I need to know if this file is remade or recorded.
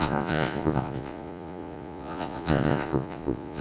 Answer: remade